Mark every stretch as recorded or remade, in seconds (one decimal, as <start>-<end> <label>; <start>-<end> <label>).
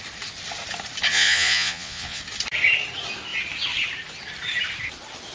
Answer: 0.0-1.1 recorded; 1.1-2.2 remade; 2.2-5.3 recorded